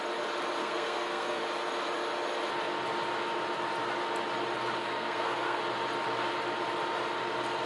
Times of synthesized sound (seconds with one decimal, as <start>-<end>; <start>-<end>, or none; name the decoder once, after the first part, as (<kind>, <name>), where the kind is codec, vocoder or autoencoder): 0.6-1.4 (codec, SNAC); 4.8-5.6